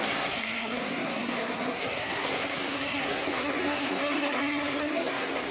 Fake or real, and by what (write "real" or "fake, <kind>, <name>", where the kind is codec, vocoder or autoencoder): fake, codec, SNAC